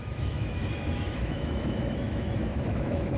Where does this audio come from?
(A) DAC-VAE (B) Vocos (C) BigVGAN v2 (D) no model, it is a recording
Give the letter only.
A